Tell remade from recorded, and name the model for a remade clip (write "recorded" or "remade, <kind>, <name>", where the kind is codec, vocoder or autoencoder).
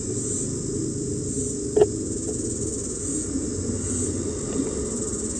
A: recorded